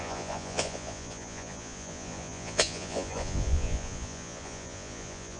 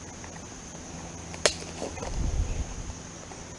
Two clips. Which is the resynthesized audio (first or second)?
first